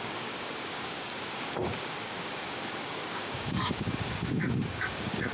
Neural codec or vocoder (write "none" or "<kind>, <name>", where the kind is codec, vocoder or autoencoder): codec, DAC